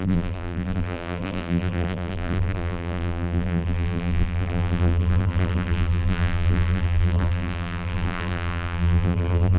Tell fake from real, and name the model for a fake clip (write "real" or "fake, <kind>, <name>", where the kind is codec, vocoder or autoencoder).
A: fake, vocoder, BigVGAN v2